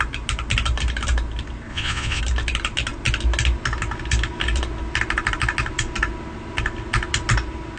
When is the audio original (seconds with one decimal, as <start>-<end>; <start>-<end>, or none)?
0.0-1.7; 2.2-7.8